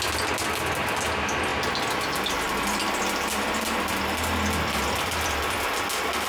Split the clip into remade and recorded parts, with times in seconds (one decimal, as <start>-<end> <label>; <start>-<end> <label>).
0.0-6.3 recorded